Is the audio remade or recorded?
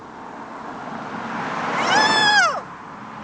recorded